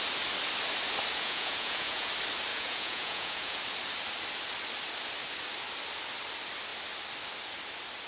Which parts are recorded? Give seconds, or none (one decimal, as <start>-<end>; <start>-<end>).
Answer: 0.0-1.1; 2.1-2.5; 3.6-8.1